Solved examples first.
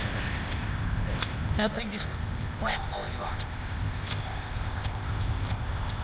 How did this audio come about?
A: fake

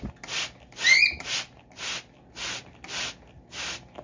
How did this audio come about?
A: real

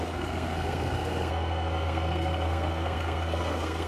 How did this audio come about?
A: fake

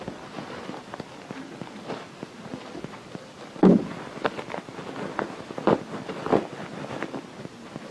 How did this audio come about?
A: real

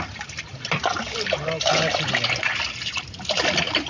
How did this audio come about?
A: real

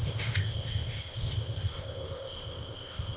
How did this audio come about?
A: fake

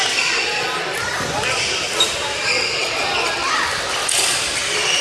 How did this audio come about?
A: real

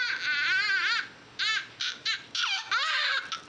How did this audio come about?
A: real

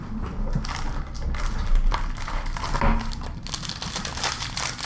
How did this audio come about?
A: real